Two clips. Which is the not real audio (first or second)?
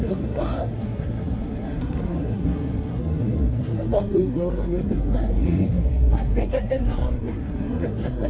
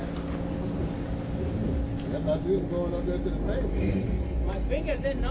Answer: first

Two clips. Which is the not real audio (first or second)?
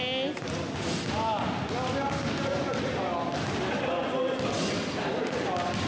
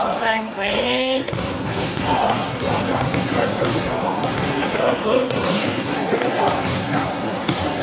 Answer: second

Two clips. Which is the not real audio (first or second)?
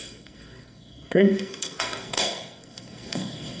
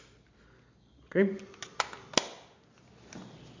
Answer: first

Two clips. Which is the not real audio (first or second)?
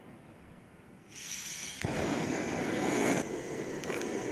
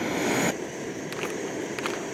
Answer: first